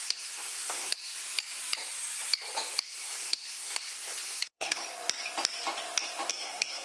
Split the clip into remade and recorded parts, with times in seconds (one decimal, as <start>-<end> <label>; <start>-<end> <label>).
0.0-1.2 remade; 1.2-2.8 recorded; 2.8-4.8 remade; 4.8-6.3 recorded; 6.3-6.8 remade